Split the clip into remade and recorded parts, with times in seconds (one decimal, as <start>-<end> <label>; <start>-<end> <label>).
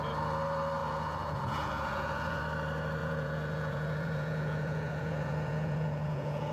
0.0-0.8 recorded; 0.8-2.4 remade; 2.4-3.0 recorded; 3.0-6.5 remade